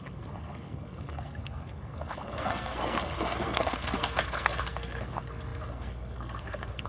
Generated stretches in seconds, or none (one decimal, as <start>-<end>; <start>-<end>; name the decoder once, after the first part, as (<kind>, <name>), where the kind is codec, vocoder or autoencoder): 0.0-6.9 (codec, SNAC)